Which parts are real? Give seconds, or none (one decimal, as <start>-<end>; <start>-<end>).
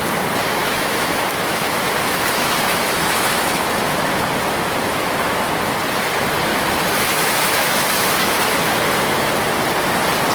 0.0-0.6; 5.5-6.5; 9.3-10.3